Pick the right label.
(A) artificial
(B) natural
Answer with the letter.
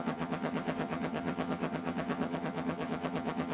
A